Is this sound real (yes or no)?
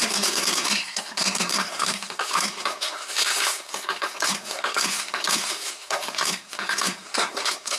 no